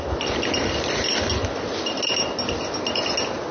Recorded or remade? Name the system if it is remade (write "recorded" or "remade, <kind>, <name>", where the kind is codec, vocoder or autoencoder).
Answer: recorded